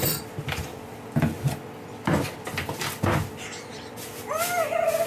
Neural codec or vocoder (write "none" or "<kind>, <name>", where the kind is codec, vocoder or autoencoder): none